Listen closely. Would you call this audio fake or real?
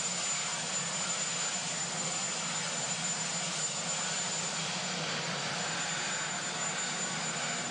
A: real